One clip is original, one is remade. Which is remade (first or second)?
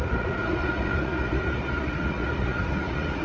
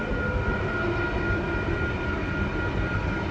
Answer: first